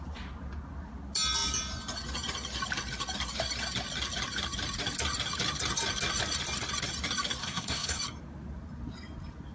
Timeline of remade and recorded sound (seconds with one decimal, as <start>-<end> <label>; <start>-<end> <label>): 0.0-7.4 recorded; 7.4-8.0 remade; 8.0-9.5 recorded